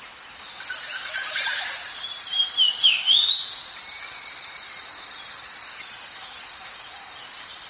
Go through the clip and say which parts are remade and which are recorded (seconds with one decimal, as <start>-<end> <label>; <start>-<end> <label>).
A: 0.0-2.8 recorded; 2.8-3.3 remade; 3.3-7.7 recorded